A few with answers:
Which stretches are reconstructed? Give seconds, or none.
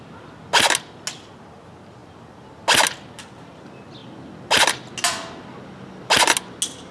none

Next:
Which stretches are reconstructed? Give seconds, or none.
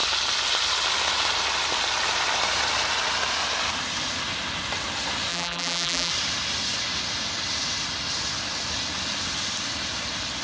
5.3-6.1 (vocoder, BigVGAN v2)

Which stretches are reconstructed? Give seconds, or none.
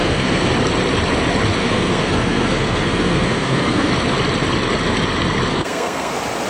0.0-0.5 (codec, SNAC); 1.6-3.9; 5.5-6.1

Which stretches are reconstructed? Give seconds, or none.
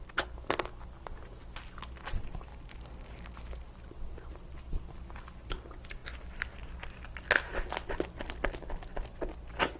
none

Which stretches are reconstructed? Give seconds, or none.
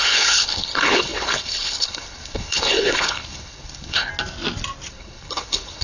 0.0-4.1 (codec, HILCodec); 4.9-5.8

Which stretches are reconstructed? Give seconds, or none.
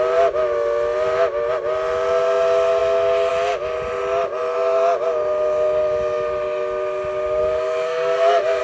7.4-8.6 (codec, SNAC)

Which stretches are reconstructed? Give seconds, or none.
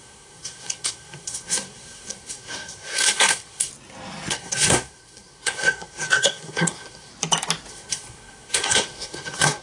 0.0-3.7 (codec, SNAC); 4.3-7.1; 7.7-9.6